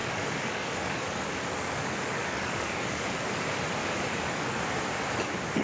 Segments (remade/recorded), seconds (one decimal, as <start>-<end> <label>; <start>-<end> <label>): 0.0-3.4 remade; 3.4-3.8 recorded; 3.8-4.6 remade; 4.6-5.6 recorded